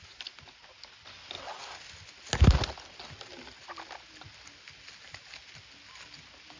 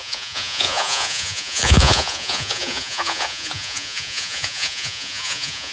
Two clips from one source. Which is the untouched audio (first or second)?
first